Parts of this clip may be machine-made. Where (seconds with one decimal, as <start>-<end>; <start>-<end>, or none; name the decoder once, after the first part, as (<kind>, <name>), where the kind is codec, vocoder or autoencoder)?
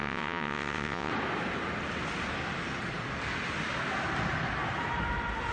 0.0-1.1 (vocoder, WaveNeXt)